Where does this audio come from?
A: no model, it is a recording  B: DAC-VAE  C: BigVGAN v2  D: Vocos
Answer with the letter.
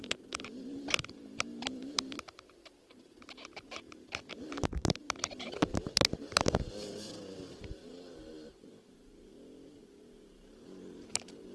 C